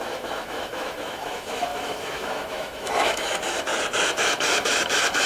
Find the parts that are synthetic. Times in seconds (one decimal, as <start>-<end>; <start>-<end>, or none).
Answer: 0.0-3.7; 4.3-5.3